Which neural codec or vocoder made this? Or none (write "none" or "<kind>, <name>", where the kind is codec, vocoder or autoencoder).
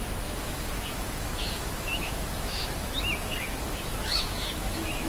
autoencoder, DAC-VAE